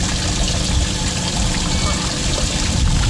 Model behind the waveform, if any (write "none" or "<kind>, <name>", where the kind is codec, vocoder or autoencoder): none